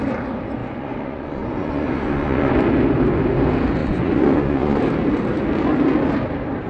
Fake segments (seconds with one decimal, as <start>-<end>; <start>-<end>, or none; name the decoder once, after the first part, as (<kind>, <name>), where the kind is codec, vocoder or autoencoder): 0.6-2.5 (vocoder, Vocos); 3.8-4.8